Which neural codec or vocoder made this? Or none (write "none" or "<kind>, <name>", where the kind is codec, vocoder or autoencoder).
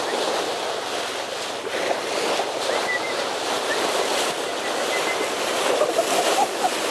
none